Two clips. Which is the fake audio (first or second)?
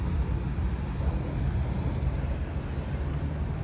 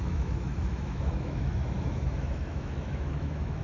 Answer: second